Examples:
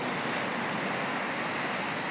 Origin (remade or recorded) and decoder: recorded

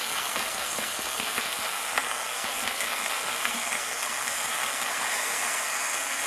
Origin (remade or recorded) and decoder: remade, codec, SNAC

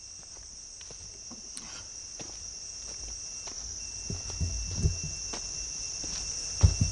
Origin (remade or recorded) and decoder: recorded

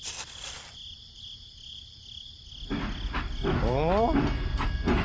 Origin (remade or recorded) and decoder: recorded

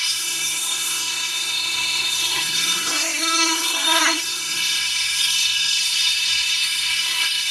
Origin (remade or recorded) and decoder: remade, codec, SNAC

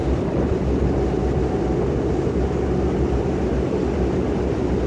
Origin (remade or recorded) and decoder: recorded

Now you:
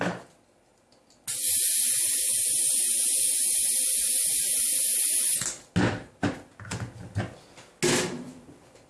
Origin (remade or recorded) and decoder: recorded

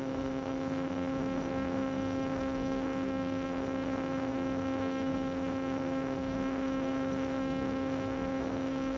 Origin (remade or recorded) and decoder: remade, codec, SNAC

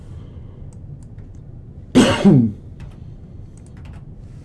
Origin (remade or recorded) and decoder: recorded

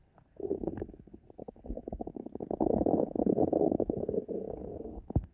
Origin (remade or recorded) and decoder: remade, codec, SNAC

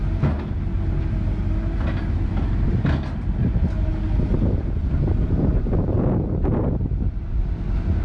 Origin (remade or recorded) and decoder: recorded